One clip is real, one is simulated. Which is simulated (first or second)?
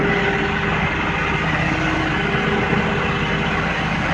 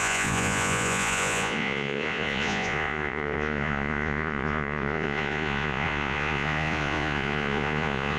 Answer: second